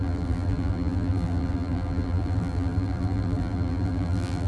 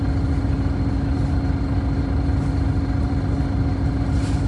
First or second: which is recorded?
second